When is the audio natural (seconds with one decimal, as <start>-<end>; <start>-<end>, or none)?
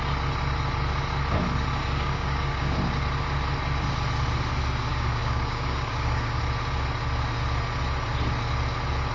0.0-1.8; 2.9-4.9; 6.4-9.1